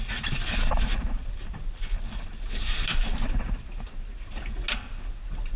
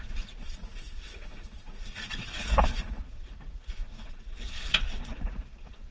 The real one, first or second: first